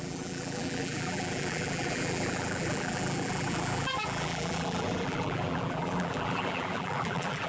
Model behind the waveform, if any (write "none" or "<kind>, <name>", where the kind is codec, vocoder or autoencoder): vocoder, BigVGAN v2